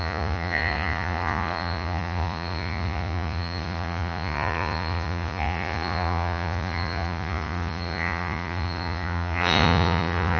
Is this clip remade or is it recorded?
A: remade